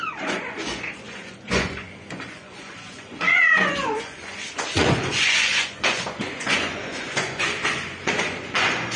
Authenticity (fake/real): fake